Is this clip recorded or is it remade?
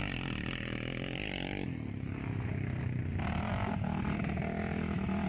recorded